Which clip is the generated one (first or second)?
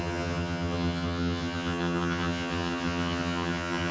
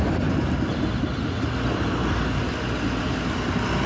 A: first